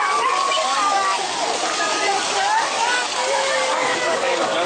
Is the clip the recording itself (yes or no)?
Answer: no